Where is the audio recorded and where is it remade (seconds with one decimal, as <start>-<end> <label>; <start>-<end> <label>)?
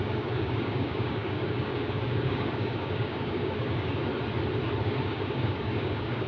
0.0-4.1 remade; 4.1-4.8 recorded; 4.8-6.3 remade